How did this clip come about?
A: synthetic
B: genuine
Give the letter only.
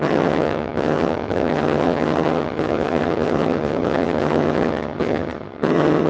A